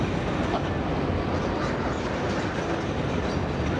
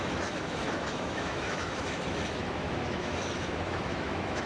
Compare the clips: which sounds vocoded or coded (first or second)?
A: second